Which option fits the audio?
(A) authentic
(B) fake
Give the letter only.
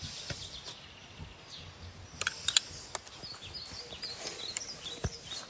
A